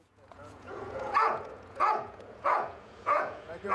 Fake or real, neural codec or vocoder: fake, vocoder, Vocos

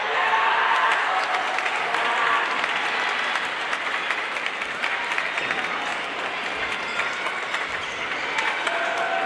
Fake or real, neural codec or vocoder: real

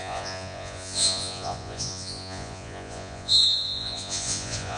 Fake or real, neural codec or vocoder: fake, vocoder, Vocos